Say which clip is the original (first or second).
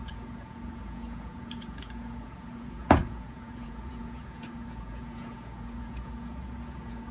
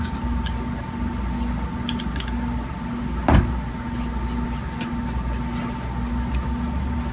second